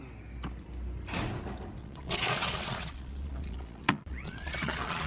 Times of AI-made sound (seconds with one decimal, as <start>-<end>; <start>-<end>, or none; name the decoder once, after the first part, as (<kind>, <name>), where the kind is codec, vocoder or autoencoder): 1.8-5.1 (vocoder, Vocos)